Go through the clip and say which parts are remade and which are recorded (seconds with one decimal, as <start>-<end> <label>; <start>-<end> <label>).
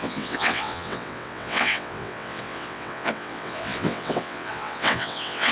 0.0-5.5 remade